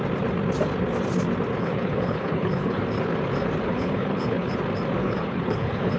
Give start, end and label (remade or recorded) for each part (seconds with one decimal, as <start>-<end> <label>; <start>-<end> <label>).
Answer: 0.0-1.6 recorded; 1.6-2.8 remade; 2.8-3.7 recorded; 3.7-4.5 remade; 4.5-5.0 recorded; 5.0-6.0 remade